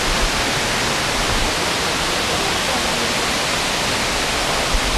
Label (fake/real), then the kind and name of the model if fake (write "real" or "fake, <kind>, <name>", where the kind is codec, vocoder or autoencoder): real